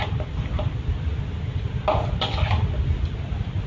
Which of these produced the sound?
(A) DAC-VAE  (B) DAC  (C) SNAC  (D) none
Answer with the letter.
D